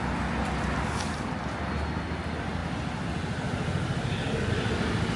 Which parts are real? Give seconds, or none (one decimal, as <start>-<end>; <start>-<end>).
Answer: 0.0-5.2